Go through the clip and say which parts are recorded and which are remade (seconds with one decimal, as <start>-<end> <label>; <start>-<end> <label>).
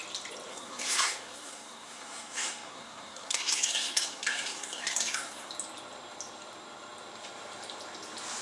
0.0-0.5 recorded; 0.5-5.5 remade; 5.5-8.4 recorded